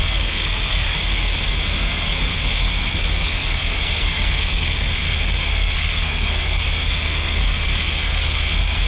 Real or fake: fake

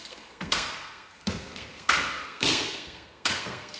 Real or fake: fake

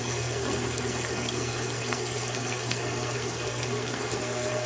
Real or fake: fake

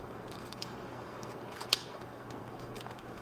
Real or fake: fake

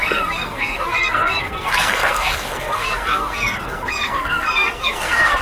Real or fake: fake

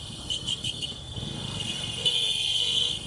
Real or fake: fake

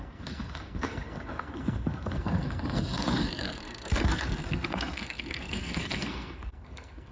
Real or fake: fake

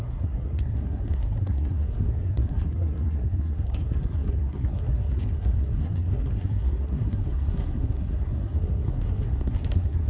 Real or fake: fake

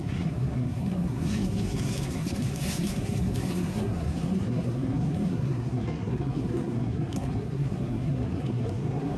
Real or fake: fake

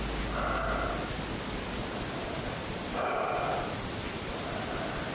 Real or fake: real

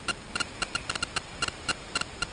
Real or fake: real